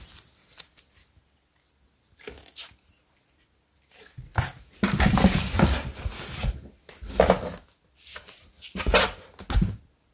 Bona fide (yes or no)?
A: yes